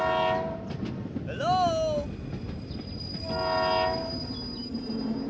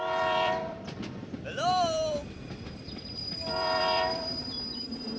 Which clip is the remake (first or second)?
second